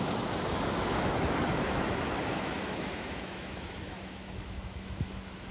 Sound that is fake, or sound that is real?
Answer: fake